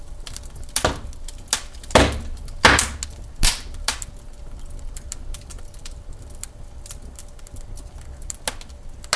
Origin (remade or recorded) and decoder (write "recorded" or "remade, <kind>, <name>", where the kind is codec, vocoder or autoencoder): recorded